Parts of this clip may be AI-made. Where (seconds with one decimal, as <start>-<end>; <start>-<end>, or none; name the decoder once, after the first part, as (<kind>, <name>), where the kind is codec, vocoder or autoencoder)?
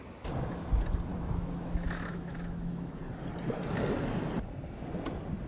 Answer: 1.1-3.0 (autoencoder, DAC-VAE)